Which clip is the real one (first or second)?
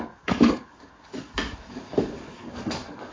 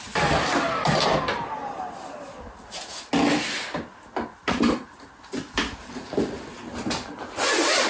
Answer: second